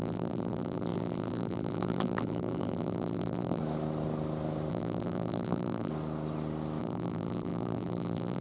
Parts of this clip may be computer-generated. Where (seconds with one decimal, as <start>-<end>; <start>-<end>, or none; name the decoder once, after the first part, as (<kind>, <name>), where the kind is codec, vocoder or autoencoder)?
0.0-3.6 (vocoder, BigVGAN v2); 4.7-5.9; 6.8-8.4